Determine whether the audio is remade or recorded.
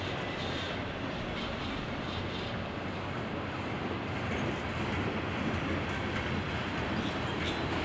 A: recorded